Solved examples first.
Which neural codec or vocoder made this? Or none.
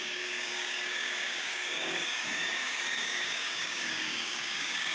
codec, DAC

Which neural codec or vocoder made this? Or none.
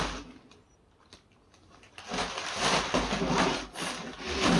none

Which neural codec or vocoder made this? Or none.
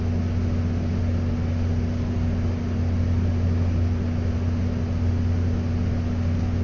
none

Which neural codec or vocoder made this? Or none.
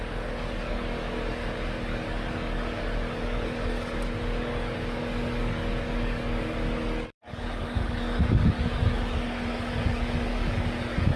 codec, DAC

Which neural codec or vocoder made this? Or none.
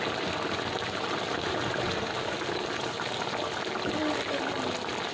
none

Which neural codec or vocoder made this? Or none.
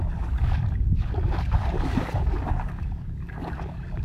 codec, DAC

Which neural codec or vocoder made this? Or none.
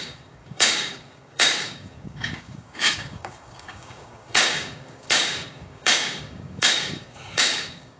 codec, DAC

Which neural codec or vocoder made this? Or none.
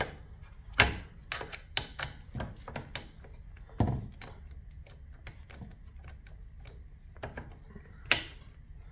none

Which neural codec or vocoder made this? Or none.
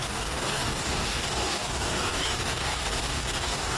codec, DAC